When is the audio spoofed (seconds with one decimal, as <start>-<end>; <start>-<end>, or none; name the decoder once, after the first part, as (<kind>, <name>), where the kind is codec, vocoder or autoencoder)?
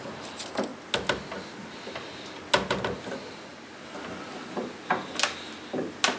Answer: none